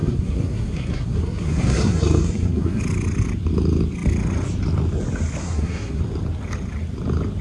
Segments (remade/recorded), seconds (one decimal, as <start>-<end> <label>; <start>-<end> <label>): 0.0-2.8 remade; 2.8-5.4 recorded; 5.4-6.0 remade; 6.0-7.4 recorded